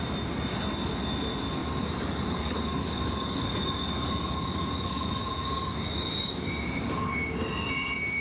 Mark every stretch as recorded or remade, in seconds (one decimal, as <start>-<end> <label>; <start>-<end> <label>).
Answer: 0.0-1.6 recorded; 1.6-6.5 remade; 6.5-8.2 recorded